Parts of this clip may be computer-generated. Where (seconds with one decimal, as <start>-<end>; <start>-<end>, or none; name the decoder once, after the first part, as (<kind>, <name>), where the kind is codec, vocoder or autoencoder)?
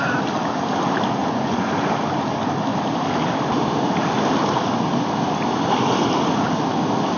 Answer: 1.2-1.7 (vocoder, Vocos)